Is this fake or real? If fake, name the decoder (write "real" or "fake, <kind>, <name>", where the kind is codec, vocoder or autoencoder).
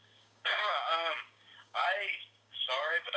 fake, codec, DAC